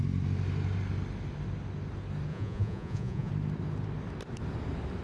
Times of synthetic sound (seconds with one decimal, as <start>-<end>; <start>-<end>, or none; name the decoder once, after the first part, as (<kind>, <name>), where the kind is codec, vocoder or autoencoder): 2.3-3.3 (vocoder, Vocos)